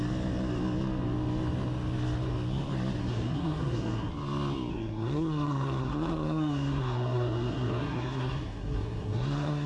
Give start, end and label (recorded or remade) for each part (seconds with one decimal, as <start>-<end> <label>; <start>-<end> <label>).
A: 0.0-3.0 recorded; 3.0-4.1 remade; 4.1-4.7 recorded; 4.7-9.7 remade

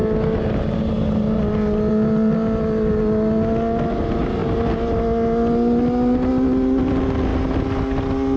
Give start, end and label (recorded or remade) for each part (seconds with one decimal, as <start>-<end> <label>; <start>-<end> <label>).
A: 0.0-8.4 recorded

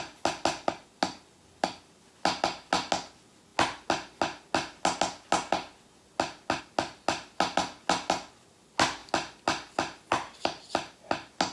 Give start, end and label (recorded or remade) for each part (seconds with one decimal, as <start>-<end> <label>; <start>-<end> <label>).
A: 0.0-11.5 recorded

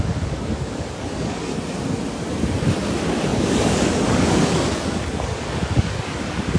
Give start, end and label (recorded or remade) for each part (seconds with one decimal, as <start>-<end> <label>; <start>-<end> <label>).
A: 0.0-1.5 remade; 1.5-2.7 recorded; 2.7-6.6 remade